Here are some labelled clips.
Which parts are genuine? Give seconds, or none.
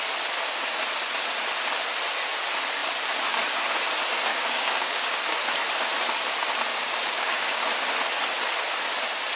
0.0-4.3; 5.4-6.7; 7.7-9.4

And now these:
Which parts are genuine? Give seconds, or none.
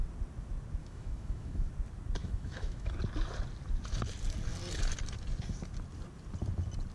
0.0-0.8; 1.7-2.2; 2.9-6.9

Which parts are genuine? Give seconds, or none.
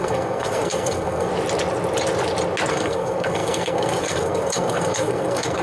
1.3-2.7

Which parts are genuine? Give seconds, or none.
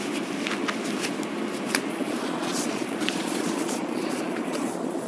0.0-1.9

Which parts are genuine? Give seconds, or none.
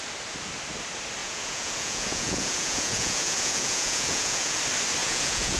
0.0-1.2; 4.6-5.0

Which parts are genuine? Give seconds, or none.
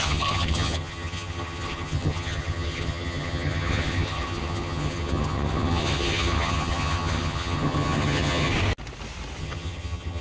8.5-9.4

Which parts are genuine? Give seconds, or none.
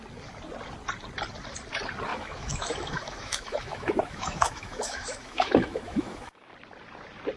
0.0-2.1; 6.5-7.4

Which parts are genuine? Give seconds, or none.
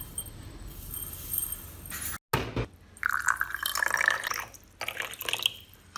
0.0-6.0